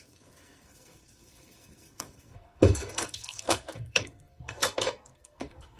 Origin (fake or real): fake